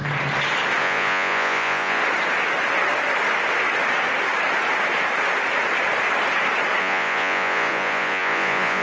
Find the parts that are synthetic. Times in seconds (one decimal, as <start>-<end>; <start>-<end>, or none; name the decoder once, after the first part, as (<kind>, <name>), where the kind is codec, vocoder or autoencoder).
0.8-2.0 (vocoder, Vocos); 6.8-8.8